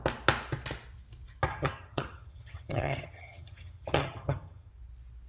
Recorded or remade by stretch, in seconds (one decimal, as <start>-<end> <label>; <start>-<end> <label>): 0.0-1.5 recorded; 1.5-4.7 remade; 4.7-5.3 recorded